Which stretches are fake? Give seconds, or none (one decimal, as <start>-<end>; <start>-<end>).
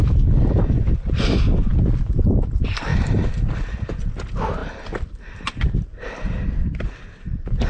none